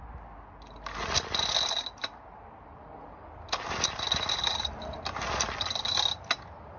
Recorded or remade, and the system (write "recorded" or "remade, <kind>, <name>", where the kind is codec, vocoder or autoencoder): recorded